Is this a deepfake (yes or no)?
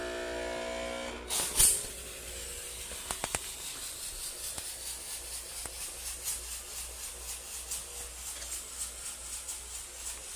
no